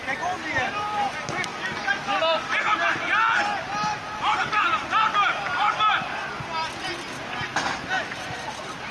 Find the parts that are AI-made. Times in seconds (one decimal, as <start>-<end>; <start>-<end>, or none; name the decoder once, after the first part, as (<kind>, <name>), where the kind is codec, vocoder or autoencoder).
none